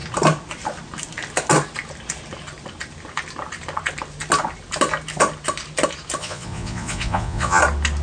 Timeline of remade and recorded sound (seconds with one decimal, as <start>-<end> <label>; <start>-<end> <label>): 0.0-6.2 recorded; 6.2-7.6 remade; 7.6-8.0 recorded